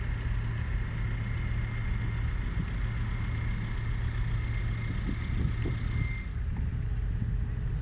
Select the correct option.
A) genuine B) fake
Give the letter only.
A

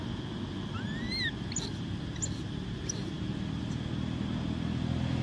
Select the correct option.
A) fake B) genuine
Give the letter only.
B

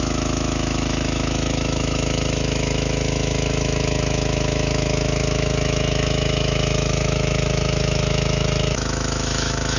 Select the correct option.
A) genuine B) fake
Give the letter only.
B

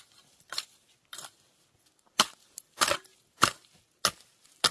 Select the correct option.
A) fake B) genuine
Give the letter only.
B